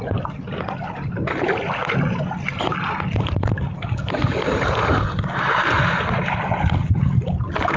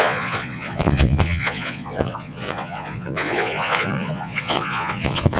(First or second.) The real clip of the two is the first